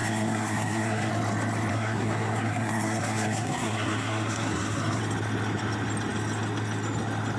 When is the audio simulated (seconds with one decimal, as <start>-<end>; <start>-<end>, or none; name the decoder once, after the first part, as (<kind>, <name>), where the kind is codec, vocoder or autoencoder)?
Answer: 0.0-1.1 (codec, SNAC); 1.7-5.0